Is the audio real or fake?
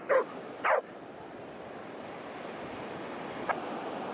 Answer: fake